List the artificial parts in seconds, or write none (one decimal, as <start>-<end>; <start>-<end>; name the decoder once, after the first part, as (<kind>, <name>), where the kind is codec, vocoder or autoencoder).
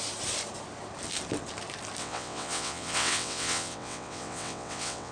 2.0-5.1 (vocoder, WaveNeXt)